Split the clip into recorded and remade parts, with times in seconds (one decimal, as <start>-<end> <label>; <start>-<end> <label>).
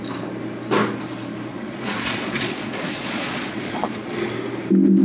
0.0-1.5 recorded; 1.5-4.3 remade; 4.3-5.0 recorded